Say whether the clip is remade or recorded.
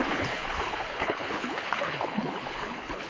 remade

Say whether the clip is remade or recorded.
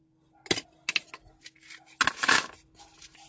recorded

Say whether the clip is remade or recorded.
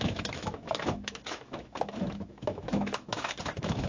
remade